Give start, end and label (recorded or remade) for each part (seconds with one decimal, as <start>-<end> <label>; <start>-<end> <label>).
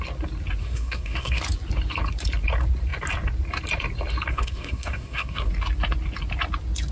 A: 0.0-0.6 recorded; 0.6-1.4 remade; 1.4-4.3 recorded; 4.3-5.5 remade; 5.5-6.9 recorded